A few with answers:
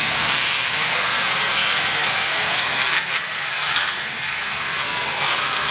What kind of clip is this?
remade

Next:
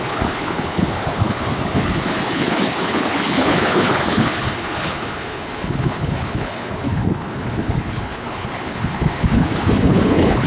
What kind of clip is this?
remade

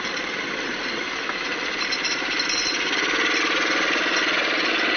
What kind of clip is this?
recorded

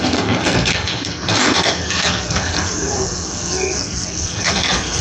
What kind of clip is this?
remade